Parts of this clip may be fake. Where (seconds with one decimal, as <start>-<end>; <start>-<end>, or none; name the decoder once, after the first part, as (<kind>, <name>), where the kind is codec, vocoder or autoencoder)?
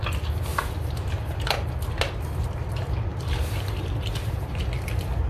0.5-1.1 (vocoder, BigVGAN v2); 3.1-4.6